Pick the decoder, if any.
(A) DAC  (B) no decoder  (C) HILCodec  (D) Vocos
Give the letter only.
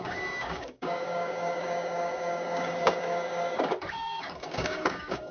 A